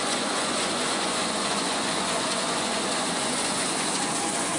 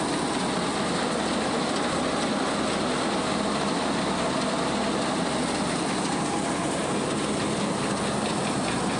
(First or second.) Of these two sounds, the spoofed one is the first